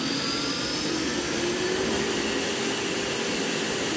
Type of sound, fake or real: real